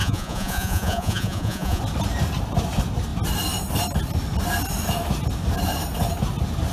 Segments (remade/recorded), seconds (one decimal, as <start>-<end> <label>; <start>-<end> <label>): 0.0-1.8 remade; 1.8-6.7 recorded